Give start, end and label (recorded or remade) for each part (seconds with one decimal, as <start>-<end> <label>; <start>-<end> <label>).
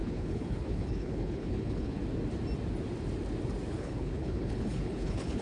0.0-2.0 remade; 2.0-3.7 recorded; 3.7-5.4 remade